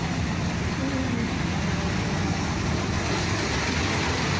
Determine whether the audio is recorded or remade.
recorded